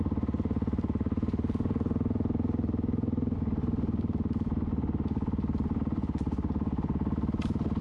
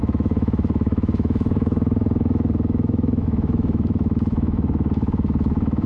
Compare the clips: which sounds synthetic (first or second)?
second